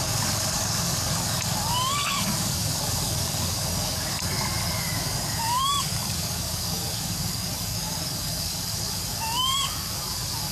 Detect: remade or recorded remade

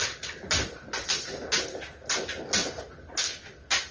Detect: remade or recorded recorded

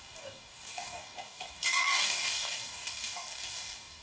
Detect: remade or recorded remade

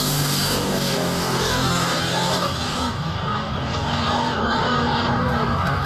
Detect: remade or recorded remade